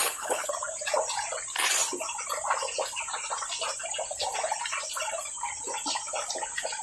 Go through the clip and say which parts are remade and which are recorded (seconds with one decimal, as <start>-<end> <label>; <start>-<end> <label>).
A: 0.0-0.5 remade; 0.5-6.8 recorded